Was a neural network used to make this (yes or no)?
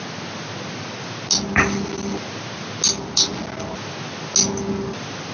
no